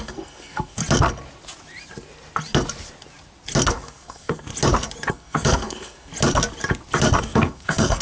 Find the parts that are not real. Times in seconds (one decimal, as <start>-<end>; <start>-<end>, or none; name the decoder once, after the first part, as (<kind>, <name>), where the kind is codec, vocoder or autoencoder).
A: 0.0-0.8 (codec, SNAC); 3.7-4.5; 5.1-6.1; 7.2-8.0